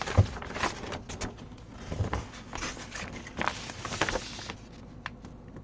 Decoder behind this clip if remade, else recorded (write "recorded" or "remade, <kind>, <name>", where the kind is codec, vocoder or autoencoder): recorded